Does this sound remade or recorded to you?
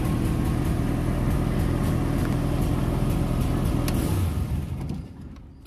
recorded